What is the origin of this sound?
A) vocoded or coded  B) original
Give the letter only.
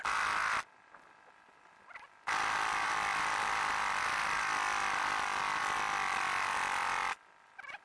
B